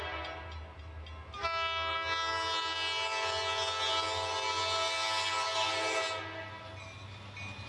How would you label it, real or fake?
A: real